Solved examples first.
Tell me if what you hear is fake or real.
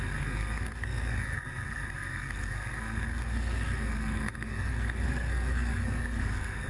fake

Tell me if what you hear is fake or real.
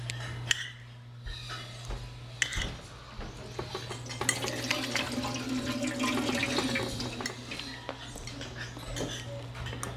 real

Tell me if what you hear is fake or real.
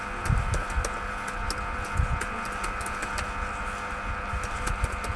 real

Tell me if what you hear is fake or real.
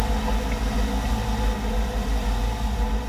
real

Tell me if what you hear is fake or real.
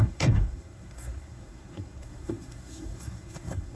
fake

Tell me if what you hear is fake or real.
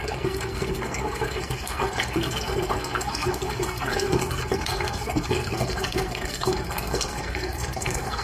fake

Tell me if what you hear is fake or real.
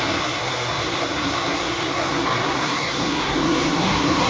fake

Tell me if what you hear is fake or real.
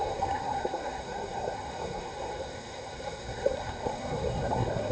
fake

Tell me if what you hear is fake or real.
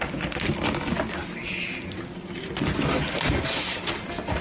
real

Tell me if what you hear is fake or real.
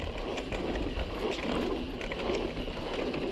real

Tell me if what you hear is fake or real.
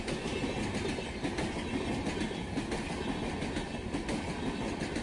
real